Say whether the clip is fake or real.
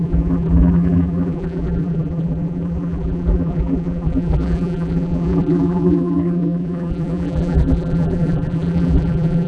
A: fake